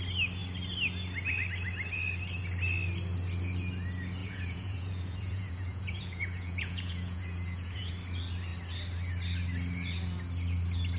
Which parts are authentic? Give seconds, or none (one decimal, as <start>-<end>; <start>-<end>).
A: 0.0-4.2; 7.9-11.0